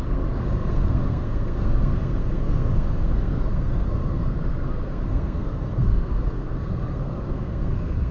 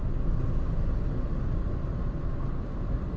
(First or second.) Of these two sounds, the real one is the second